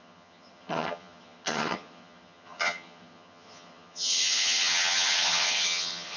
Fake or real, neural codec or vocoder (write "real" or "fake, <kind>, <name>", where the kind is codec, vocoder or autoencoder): fake, vocoder, HiFi-GAN